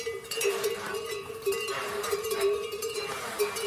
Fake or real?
fake